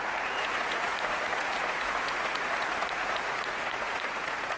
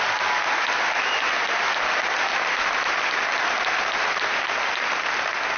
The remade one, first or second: first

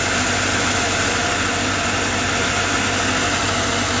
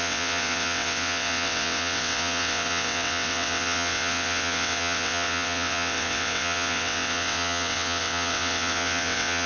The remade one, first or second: second